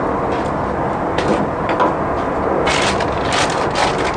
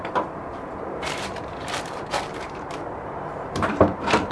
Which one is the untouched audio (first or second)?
first